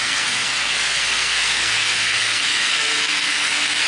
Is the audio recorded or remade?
remade